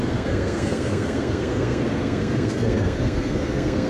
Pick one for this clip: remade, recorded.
remade